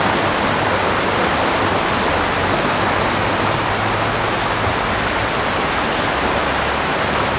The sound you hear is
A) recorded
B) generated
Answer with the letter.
A